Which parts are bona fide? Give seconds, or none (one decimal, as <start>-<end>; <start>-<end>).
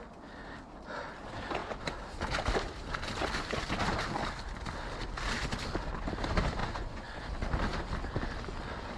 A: 0.0-6.6; 7.2-9.0